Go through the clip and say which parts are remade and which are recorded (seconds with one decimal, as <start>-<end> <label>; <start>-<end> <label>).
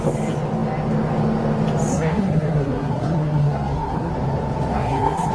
0.0-1.9 recorded; 1.9-4.1 remade; 4.1-4.7 recorded; 4.7-5.3 remade